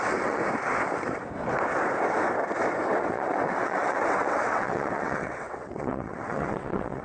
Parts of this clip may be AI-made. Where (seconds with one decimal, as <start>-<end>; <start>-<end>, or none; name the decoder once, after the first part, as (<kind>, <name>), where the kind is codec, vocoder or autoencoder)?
0.0-0.4 (vocoder, WaveNeXt); 3.0-7.0